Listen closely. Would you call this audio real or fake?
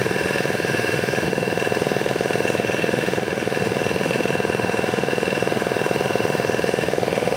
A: fake